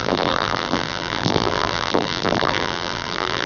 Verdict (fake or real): fake